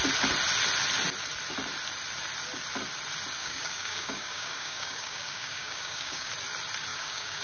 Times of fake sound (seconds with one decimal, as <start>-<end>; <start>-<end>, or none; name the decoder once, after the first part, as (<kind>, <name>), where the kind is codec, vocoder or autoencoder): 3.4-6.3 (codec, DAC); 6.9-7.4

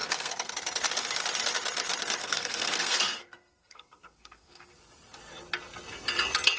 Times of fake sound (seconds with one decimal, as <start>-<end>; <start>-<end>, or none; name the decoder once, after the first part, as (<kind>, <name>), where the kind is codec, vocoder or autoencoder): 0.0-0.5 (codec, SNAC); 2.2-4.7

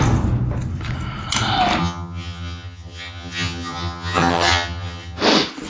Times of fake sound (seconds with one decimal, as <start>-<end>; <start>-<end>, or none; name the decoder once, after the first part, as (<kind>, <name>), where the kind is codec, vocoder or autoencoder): 1.8-5.2 (vocoder, HiFi-GAN)

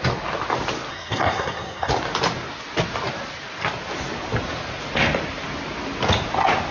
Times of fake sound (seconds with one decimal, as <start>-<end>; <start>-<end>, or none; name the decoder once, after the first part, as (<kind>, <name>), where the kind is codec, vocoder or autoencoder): 0.9-1.9 (codec, SNAC)

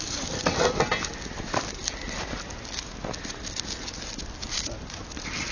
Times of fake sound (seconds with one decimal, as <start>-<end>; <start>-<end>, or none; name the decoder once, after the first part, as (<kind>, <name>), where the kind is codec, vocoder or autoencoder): 0.0-2.5 (vocoder, BigVGAN v2); 4.1-5.5

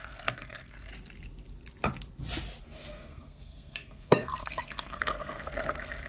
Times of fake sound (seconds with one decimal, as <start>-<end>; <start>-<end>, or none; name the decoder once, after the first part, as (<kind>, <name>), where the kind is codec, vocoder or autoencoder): 0.0-0.9 (codec, SNAC); 2.6-6.1

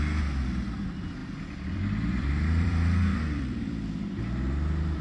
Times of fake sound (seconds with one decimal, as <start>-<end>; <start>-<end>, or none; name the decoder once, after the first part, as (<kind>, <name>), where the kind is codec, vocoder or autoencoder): 1.2-4.2 (vocoder, BigVGAN v2)

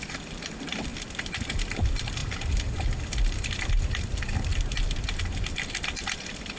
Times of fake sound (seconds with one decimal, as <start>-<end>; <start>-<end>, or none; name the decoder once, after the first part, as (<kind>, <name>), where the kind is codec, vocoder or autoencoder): 2.2-3.0 (vocoder, BigVGAN v2)